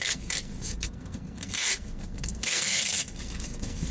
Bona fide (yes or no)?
no